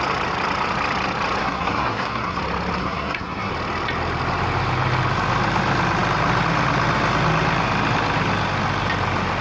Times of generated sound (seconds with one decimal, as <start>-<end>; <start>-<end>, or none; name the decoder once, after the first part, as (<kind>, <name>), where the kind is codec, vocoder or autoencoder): 1.4-2.4 (codec, SNAC); 2.8-3.5